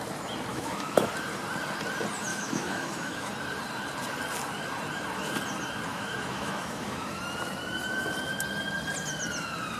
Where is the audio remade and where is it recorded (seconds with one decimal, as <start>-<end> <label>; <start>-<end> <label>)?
0.0-0.5 recorded; 0.5-1.1 remade; 1.1-2.3 recorded; 2.3-3.3 remade; 3.3-5.9 recorded; 5.9-7.2 remade; 7.2-9.8 recorded